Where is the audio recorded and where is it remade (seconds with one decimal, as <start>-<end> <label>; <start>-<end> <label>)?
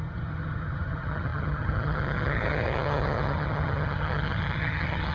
0.0-5.1 remade